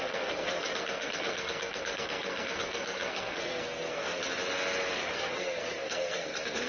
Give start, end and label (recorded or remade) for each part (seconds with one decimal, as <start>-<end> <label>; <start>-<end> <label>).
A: 0.0-4.1 remade; 4.1-5.1 recorded; 5.1-6.7 remade